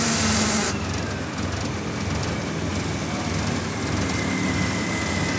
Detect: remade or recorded recorded